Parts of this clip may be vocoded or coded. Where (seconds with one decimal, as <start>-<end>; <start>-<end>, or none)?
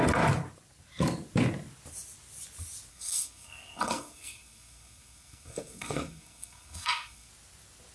2.9-7.3